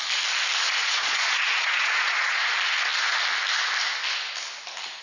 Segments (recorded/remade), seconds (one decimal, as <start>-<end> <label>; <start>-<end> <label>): 0.0-0.8 recorded; 0.8-2.4 remade; 2.4-5.0 recorded